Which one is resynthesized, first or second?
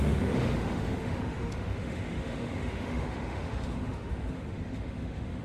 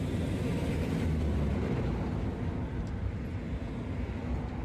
first